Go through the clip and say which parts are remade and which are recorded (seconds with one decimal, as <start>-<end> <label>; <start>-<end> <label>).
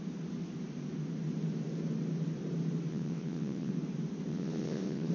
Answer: 0.0-2.9 recorded; 2.9-3.7 remade; 3.7-4.3 recorded; 4.3-5.1 remade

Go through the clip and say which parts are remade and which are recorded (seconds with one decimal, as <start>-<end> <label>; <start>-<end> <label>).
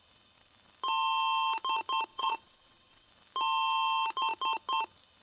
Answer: 0.0-2.1 recorded; 2.1-3.1 remade; 3.1-5.2 recorded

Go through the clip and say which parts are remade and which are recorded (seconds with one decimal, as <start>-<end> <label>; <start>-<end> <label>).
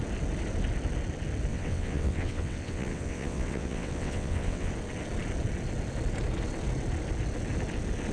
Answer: 0.0-1.5 recorded; 1.5-4.7 remade; 4.7-8.1 recorded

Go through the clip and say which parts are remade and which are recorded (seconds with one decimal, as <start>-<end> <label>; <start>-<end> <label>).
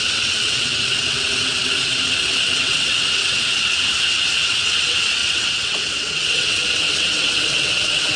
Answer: 0.0-8.2 remade